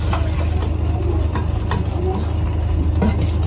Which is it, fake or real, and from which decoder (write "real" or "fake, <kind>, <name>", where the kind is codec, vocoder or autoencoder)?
real